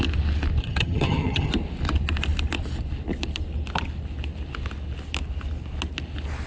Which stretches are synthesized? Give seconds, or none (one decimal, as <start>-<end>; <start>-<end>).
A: 0.6-1.5